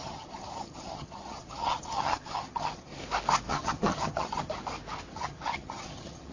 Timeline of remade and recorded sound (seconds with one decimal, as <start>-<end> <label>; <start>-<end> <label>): 0.0-3.0 remade; 3.0-3.5 recorded; 3.5-4.5 remade; 4.5-5.1 recorded; 5.1-6.3 remade